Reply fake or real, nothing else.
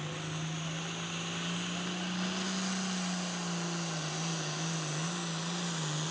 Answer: real